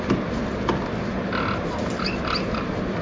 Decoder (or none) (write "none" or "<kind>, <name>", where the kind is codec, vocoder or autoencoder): none